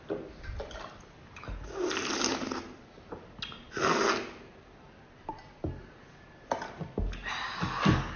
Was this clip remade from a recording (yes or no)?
no